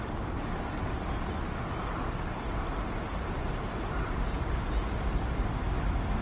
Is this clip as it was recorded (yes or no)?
yes